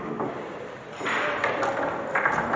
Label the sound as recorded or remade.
recorded